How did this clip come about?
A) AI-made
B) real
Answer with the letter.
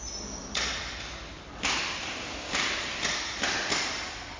B